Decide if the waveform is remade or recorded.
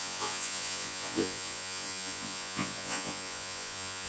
remade